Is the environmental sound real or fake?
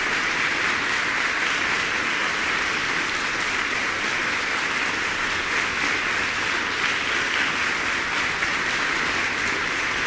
real